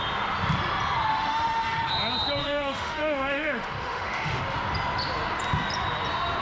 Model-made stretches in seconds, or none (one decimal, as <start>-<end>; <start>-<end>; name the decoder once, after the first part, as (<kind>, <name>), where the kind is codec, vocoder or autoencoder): 1.1-1.9 (autoencoder, DAC-VAE); 2.4-4.4